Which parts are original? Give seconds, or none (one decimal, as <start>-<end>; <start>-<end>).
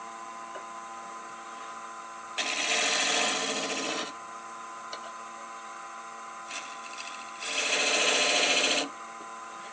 0.0-7.6; 8.7-9.7